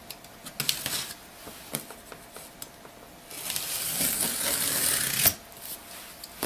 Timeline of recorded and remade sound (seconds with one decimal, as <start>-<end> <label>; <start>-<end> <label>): 0.0-6.5 recorded